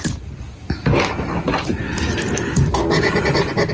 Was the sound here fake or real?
real